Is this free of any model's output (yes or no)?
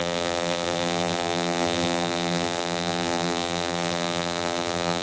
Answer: no